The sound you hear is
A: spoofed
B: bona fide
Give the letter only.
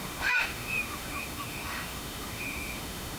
A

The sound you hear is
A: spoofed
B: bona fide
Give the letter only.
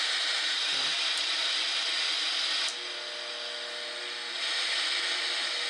B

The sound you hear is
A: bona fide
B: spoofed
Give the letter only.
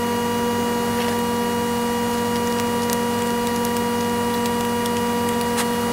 A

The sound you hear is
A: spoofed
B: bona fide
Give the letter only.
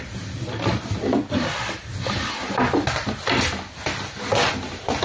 B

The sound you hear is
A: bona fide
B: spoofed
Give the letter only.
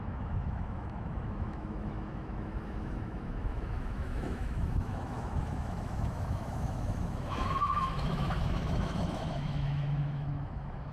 B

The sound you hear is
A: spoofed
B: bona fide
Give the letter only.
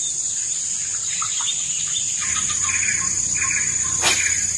B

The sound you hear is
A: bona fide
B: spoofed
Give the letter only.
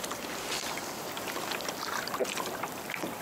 A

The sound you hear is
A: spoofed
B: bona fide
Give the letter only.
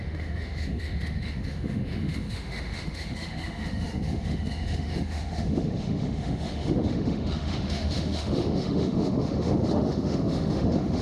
A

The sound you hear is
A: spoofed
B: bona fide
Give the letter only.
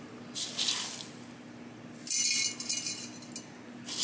B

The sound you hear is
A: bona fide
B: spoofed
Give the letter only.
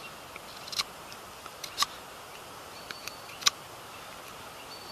A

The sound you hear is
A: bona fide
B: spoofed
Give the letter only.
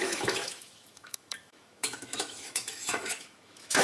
B